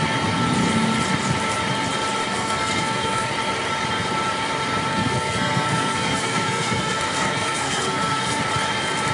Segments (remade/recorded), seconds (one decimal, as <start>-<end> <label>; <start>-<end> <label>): 0.0-2.2 recorded; 2.2-3.3 remade; 3.3-4.9 recorded; 4.9-8.4 remade; 8.4-9.1 recorded